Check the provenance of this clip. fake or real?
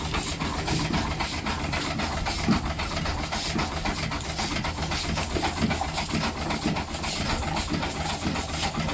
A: real